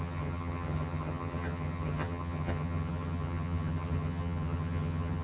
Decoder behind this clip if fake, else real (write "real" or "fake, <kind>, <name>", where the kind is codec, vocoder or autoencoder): fake, vocoder, HiFi-GAN